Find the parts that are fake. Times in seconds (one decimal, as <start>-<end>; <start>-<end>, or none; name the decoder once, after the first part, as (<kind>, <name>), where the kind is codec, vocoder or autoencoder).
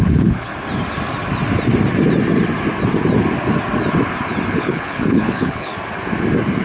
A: 0.0-0.5 (codec, HILCodec); 4.5-5.7